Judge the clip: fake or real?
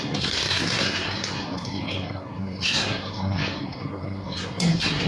fake